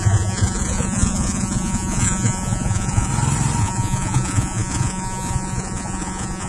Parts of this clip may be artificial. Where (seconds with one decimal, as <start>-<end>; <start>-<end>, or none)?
0.0-3.1; 3.6-6.5